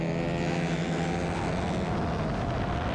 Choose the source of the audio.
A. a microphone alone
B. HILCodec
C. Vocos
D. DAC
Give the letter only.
A